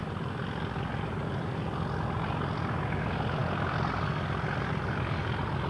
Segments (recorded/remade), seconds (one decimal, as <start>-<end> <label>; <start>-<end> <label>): 0.0-5.7 recorded